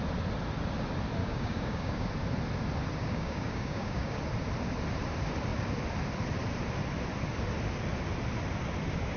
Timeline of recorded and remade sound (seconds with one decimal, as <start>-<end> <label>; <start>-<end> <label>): 0.0-1.2 recorded; 1.2-2.1 remade; 2.1-3.0 recorded; 3.0-4.2 remade; 4.2-9.2 recorded